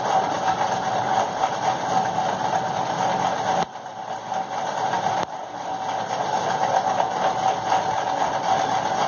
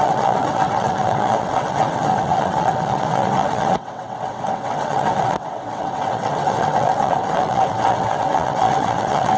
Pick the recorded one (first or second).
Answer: first